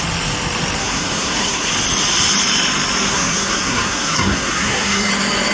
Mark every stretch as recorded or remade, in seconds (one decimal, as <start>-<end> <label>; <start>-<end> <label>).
0.0-0.8 recorded; 0.8-1.7 remade; 1.7-3.1 recorded; 3.1-5.1 remade; 5.1-5.5 recorded